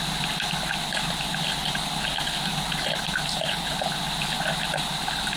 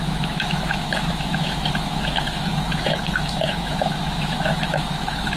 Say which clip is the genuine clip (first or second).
first